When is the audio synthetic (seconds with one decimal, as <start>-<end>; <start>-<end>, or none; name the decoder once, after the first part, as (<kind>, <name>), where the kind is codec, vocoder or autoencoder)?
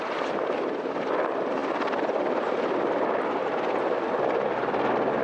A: none